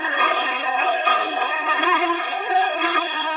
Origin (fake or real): fake